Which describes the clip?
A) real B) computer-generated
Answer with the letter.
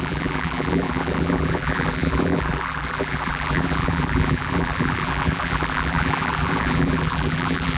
B